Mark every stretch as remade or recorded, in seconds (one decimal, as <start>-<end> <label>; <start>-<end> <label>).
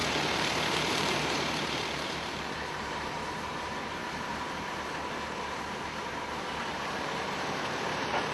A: 0.0-4.0 remade; 4.0-6.7 recorded; 6.7-8.3 remade